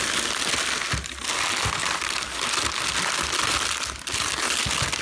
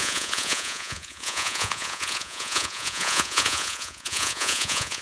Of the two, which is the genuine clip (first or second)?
first